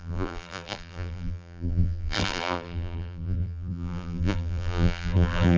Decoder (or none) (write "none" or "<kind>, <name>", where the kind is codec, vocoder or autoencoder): vocoder, BigVGAN v2